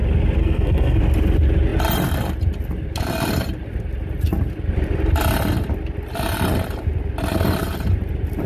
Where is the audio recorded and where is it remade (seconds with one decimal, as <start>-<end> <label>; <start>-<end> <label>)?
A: 0.0-0.4 recorded; 0.4-1.0 remade; 1.0-8.5 recorded